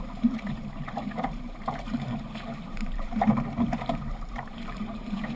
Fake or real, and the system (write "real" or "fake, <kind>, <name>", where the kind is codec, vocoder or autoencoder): fake, vocoder, BigVGAN v2